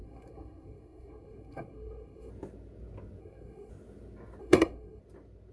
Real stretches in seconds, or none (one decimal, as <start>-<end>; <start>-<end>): 2.3-3.2; 3.7-4.4; 5.0-5.5